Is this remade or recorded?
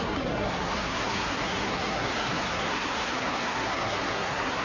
remade